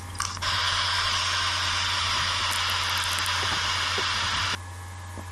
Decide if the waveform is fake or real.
real